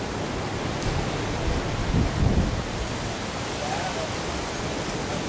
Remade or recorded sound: recorded